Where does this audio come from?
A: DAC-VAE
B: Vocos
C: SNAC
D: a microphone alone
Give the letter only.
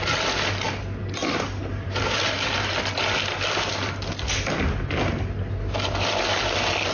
D